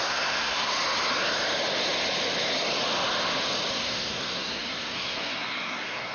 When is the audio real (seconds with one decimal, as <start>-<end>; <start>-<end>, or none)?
0.7-3.7